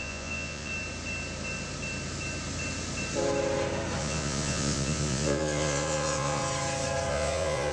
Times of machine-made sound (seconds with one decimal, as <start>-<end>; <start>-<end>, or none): 0.0-0.7; 4.0-6.4; 7.1-7.7